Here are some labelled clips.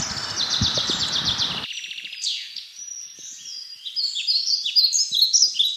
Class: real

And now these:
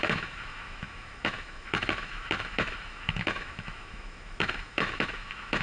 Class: fake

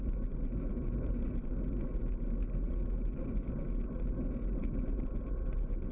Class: real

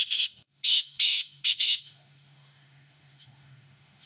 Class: fake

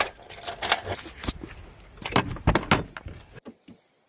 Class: real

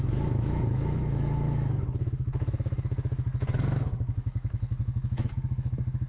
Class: fake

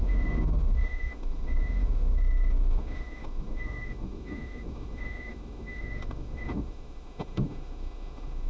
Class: fake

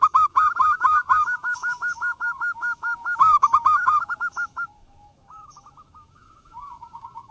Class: fake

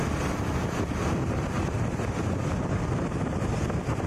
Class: real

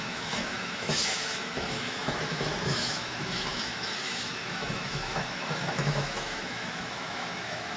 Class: fake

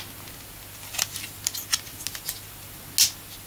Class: real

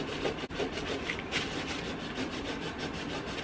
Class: real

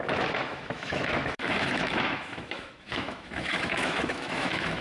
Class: fake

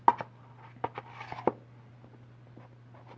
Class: real